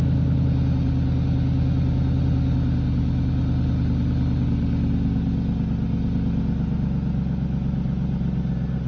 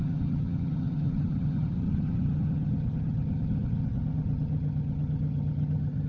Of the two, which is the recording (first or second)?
first